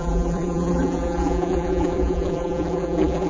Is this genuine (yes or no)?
no